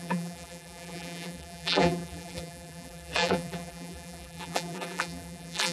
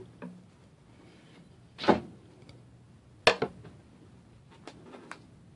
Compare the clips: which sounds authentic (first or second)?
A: second